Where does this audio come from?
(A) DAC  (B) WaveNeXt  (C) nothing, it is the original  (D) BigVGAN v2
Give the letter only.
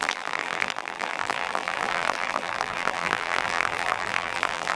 D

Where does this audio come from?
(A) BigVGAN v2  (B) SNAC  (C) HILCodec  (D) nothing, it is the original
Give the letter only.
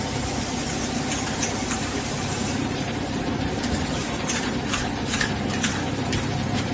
A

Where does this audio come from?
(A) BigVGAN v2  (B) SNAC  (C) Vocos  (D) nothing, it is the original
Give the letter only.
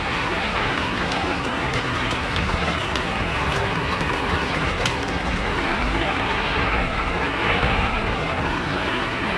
B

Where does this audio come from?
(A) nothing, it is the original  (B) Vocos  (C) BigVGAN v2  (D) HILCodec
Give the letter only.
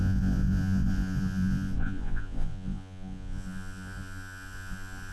B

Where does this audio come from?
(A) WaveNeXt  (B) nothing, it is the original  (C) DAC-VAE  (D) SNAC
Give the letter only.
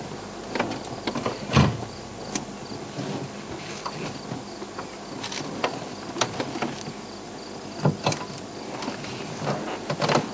B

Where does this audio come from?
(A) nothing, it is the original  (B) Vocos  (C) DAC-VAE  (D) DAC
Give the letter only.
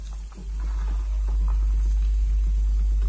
A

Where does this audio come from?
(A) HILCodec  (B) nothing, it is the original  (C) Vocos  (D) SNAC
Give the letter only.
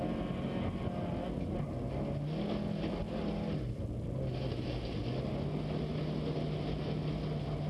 B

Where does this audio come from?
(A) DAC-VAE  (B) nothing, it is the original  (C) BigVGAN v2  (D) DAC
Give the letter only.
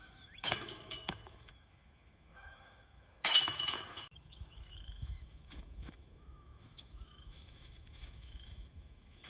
A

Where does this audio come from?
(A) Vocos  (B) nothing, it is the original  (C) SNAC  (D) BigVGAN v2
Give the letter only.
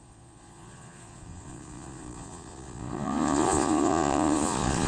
A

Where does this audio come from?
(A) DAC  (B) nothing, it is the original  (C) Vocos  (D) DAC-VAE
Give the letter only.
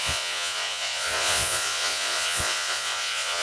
C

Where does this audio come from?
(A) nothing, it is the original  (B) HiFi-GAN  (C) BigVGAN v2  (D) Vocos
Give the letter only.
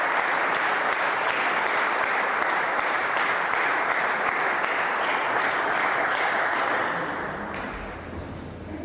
A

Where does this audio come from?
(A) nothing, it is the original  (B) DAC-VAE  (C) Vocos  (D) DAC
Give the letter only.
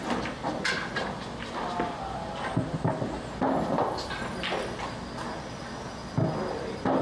A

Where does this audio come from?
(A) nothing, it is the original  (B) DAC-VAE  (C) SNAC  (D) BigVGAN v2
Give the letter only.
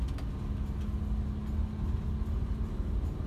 A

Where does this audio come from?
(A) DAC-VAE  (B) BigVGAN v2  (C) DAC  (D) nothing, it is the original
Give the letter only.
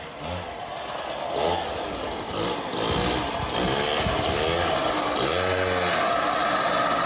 D